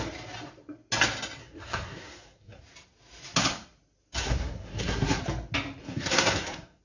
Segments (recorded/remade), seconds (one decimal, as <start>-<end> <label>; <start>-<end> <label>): 0.0-1.4 recorded; 1.4-2.6 remade; 2.6-4.2 recorded; 4.2-5.2 remade; 5.2-5.8 recorded; 5.8-6.8 remade